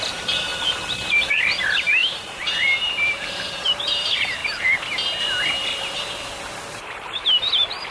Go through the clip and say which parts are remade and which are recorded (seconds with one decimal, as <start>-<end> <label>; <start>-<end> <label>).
0.0-4.4 remade; 4.4-6.8 recorded; 6.8-7.9 remade